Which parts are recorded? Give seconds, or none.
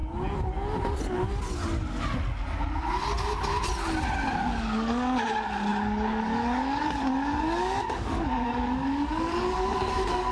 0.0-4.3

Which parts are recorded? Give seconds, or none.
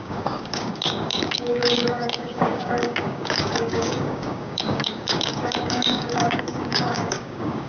none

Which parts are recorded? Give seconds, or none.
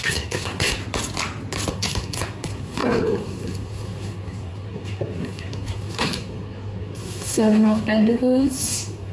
0.8-1.7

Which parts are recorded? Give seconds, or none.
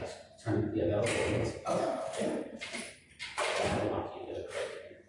0.0-3.2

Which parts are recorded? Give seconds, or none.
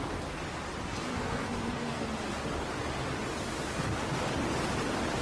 0.0-1.1; 2.1-5.2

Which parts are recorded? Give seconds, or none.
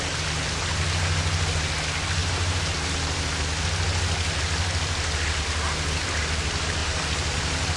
0.0-2.2; 3.5-6.8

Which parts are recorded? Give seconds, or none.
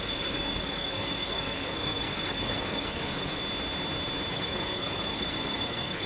3.4-4.3